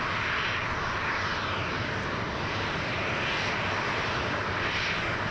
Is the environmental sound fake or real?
real